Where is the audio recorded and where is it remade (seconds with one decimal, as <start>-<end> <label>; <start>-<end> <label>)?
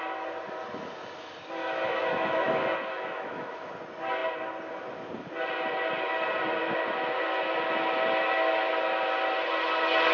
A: 0.0-1.6 recorded; 1.6-3.7 remade; 3.7-10.1 recorded